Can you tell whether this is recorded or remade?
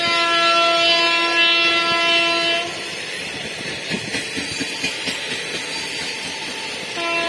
recorded